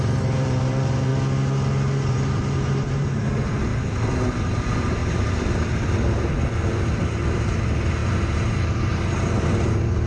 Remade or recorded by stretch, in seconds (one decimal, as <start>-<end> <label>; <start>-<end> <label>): 0.0-1.1 remade; 1.1-2.1 recorded; 2.1-3.7 remade; 3.7-4.4 recorded; 4.4-10.1 remade